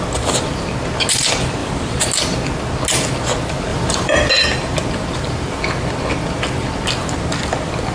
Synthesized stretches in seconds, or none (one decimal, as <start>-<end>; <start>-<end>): 1.6-2.2; 3.7-4.3

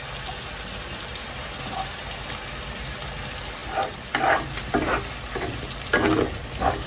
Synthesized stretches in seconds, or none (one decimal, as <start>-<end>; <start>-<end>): 1.1-1.6; 3.6-6.9

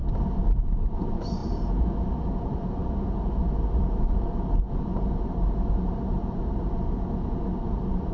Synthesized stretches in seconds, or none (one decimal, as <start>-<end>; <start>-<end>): 0.7-8.1

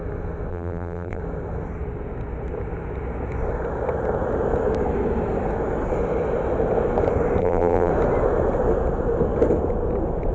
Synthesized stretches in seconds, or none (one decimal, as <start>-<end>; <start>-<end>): 0.5-1.2; 7.4-7.9

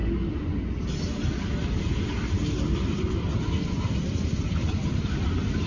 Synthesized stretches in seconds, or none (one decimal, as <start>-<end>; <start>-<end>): none

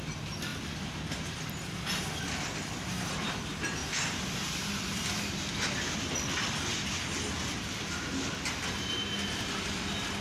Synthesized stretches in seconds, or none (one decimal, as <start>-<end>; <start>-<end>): 0.5-2.2; 3.8-5.5